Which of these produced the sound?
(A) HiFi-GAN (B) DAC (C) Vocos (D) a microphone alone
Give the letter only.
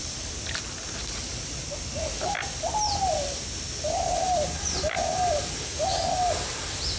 D